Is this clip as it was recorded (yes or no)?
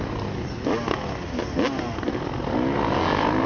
yes